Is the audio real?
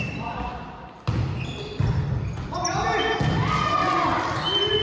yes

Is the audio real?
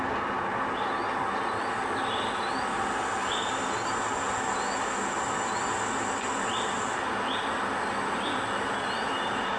yes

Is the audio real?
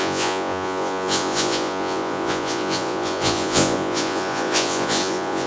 no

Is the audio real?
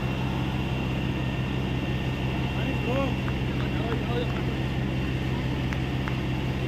yes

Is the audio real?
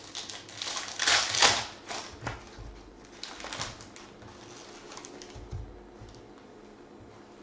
yes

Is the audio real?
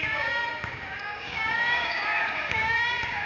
no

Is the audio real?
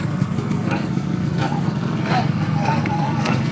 no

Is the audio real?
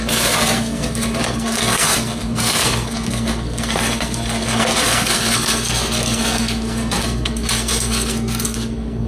no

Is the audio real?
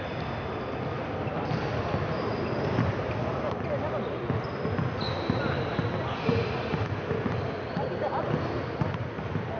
yes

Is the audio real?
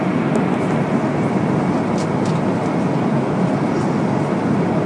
yes